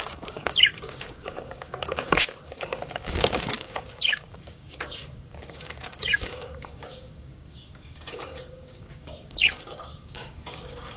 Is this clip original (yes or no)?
no